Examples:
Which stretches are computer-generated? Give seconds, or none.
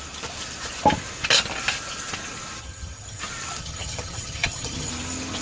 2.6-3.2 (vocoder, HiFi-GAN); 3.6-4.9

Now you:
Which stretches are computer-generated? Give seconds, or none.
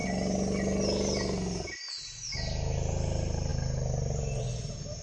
none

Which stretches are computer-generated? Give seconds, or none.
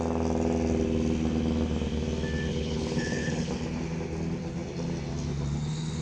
2.5-3.5 (codec, HILCodec)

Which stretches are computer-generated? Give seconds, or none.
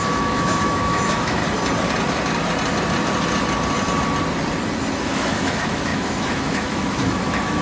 0.0-1.4 (autoencoder, DAC-VAE); 5.0-7.6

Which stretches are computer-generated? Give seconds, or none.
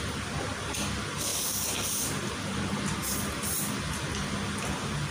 3.0-3.7 (vocoder, BigVGAN v2)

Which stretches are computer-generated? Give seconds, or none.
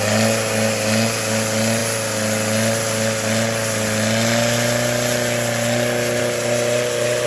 none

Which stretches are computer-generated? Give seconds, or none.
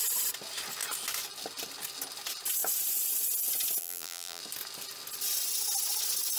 3.8-4.4 (vocoder, BigVGAN v2)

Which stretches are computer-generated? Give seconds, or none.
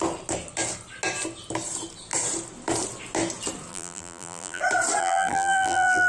3.7-4.6 (vocoder, BigVGAN v2); 5.0-6.1